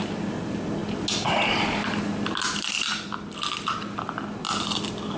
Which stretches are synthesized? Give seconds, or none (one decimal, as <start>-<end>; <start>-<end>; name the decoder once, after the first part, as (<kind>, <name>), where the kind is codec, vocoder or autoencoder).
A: none